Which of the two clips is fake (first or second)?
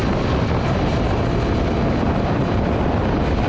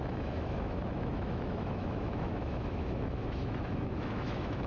second